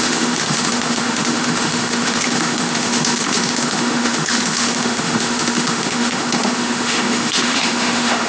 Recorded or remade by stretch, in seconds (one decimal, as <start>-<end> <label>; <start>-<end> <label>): 0.0-8.3 remade